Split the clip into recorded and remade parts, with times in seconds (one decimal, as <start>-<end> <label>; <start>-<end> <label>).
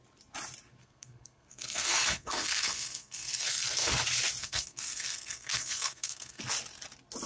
0.0-0.8 recorded; 0.8-3.9 remade; 3.9-4.4 recorded; 4.4-6.4 remade; 6.4-7.3 recorded